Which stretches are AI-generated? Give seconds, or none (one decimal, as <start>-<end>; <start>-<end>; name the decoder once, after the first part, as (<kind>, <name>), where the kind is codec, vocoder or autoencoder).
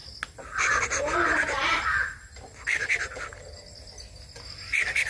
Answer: 1.6-2.2 (vocoder, BigVGAN v2)